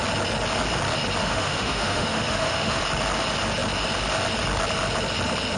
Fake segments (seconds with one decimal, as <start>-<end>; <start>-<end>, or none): 1.2-2.8